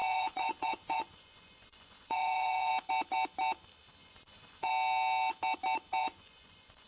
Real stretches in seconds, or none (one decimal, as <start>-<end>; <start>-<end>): 2.7-4.0; 4.7-6.0

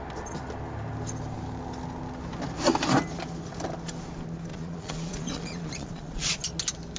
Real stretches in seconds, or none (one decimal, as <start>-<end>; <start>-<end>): 0.0-4.5; 6.4-7.0

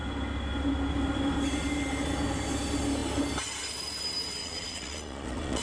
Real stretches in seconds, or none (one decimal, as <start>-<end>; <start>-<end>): 0.0-4.4

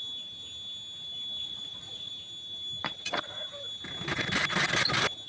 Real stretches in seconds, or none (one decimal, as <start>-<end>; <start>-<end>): 0.0-1.4; 2.1-2.8; 3.4-5.3

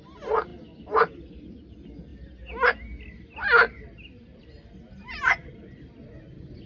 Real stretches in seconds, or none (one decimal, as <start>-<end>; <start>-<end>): 0.0-6.7